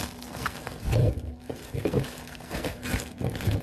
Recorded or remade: remade